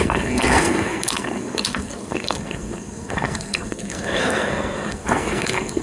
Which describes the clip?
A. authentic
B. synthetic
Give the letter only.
B